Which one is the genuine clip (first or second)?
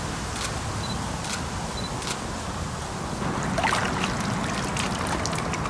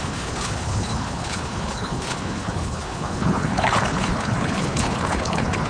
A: first